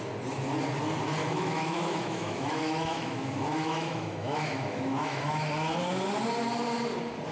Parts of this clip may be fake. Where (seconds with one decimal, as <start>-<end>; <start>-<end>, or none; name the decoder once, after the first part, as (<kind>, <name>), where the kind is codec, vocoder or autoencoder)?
1.2-5.5 (autoencoder, DAC-VAE)